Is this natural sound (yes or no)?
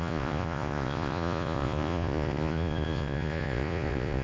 no